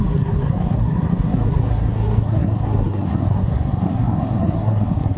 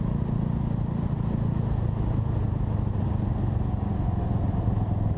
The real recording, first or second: second